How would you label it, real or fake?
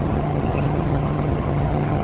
fake